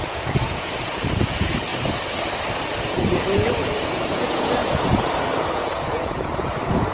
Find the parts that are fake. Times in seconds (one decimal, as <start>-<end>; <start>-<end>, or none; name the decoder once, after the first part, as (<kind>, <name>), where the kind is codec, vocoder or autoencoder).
0.0-1.7 (vocoder, Vocos); 2.8-6.9